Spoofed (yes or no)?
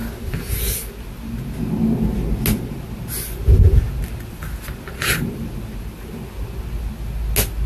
no